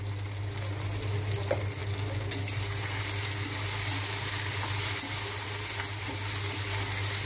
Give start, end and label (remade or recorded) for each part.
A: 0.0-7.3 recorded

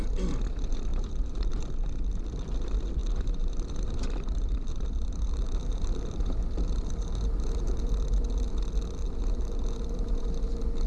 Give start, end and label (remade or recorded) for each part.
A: 0.0-0.9 recorded; 0.9-1.5 remade; 1.5-3.0 recorded; 3.0-7.9 remade; 7.9-9.0 recorded; 9.0-10.2 remade; 10.2-10.9 recorded

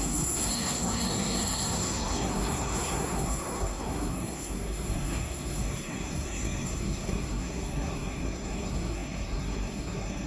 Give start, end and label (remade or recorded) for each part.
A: 0.0-10.3 remade

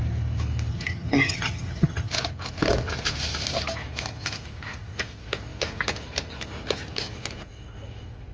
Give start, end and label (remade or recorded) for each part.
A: 0.0-0.7 recorded; 0.7-2.1 remade; 2.1-8.3 recorded

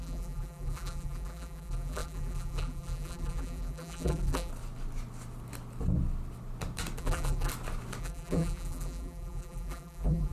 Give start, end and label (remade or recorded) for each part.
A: 0.0-4.5 remade; 4.5-7.0 recorded; 7.0-7.5 remade; 7.5-8.0 recorded; 8.0-10.3 remade

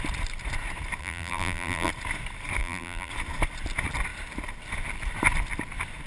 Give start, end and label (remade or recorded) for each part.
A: 0.0-1.0 recorded; 1.0-1.9 remade; 1.9-2.6 recorded; 2.6-3.1 remade; 3.1-6.1 recorded

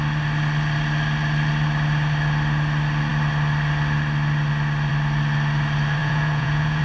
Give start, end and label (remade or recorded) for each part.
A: 0.0-6.0 recorded; 6.0-6.8 remade

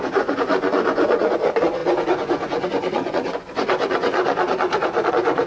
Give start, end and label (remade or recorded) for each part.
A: 0.0-5.5 remade